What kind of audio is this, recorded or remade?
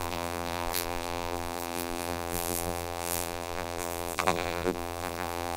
remade